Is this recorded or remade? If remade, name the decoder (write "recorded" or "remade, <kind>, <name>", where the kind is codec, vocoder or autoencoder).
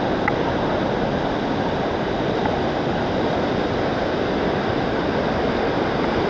recorded